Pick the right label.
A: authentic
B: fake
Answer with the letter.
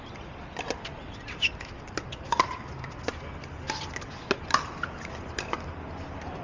A